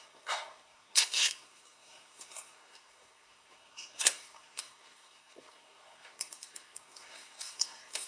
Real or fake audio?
fake